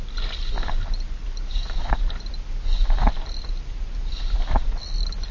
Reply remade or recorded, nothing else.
recorded